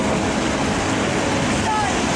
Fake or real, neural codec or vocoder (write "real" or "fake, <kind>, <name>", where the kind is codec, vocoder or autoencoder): real